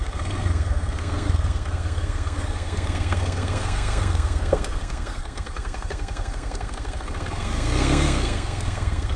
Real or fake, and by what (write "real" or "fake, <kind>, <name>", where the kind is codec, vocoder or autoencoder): fake, codec, SNAC